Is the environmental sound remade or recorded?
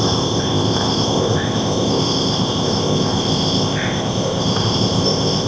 remade